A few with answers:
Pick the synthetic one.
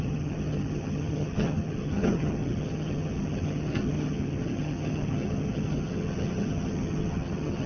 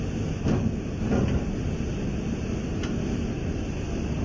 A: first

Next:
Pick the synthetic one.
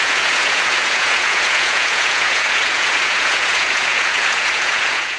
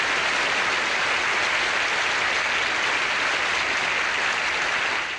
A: first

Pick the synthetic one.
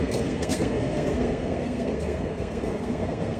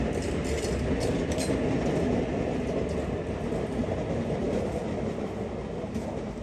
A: first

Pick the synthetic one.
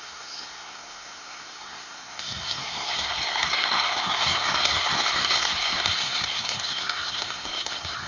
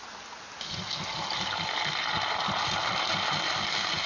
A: first